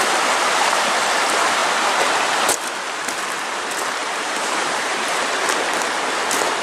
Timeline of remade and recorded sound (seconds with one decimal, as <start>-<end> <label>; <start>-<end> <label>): 0.0-4.0 recorded; 4.0-5.2 remade; 5.2-6.6 recorded